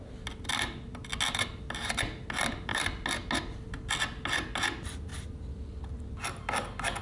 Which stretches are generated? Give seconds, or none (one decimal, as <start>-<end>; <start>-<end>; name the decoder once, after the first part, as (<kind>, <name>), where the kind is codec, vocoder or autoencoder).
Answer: none